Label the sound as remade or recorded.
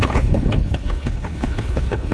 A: remade